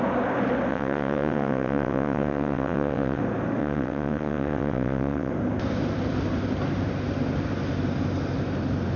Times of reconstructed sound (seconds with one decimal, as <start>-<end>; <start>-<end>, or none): 0.7-3.2; 3.6-5.3